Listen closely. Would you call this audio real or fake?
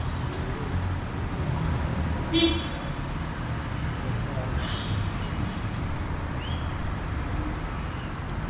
real